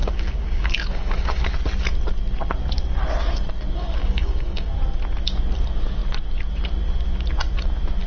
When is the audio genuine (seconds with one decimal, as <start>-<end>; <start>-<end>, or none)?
1.4-4.0; 4.7-8.1